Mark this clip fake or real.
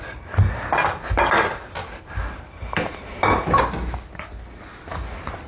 real